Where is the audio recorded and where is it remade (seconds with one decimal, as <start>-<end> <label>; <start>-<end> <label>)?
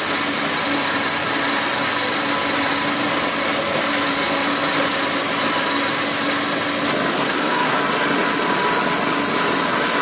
0.0-7.1 recorded; 7.1-7.8 remade; 7.8-10.0 recorded